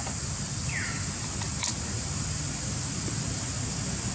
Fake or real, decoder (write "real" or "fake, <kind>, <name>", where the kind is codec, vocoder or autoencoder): real